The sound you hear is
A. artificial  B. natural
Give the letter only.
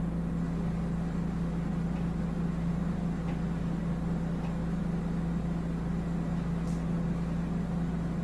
B